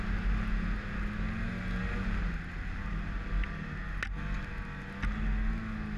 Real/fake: real